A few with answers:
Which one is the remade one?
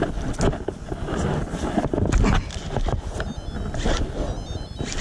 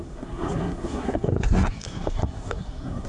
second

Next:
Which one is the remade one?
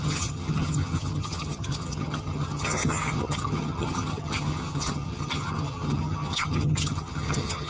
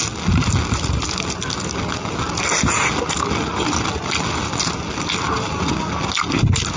first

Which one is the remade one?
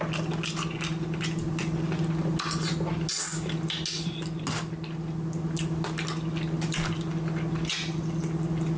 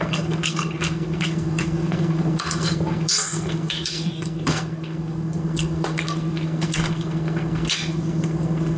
second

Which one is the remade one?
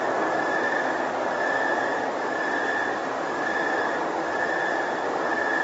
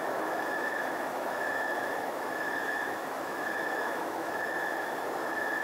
second